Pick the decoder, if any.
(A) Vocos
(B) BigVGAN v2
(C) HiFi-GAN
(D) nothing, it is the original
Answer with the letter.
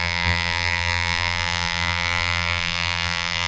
B